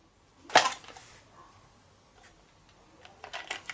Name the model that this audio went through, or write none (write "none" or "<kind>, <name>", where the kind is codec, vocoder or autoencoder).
none